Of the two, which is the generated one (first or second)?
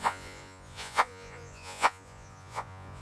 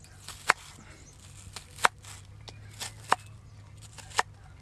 first